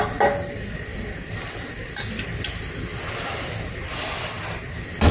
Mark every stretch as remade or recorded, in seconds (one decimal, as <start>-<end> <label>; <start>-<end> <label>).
0.0-5.1 recorded